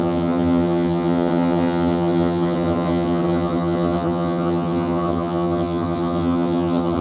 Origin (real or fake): fake